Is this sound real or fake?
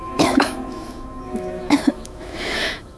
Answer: fake